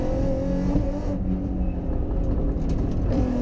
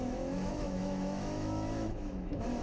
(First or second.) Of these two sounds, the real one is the first